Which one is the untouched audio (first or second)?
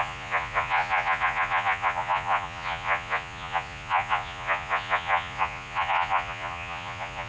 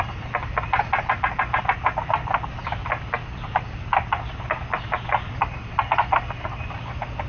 second